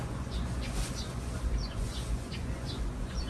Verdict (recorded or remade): remade